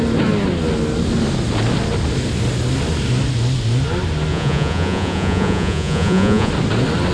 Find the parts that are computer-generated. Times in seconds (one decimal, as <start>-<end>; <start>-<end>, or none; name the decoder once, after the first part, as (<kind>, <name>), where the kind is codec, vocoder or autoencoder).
4.3-6.5 (vocoder, Vocos)